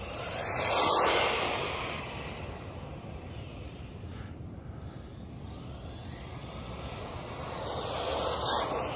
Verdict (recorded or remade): recorded